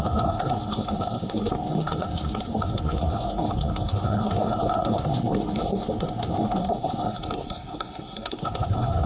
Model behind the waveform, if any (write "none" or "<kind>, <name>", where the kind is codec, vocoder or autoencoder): codec, SNAC